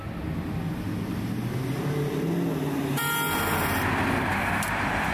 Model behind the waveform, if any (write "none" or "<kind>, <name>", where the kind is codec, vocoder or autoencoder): none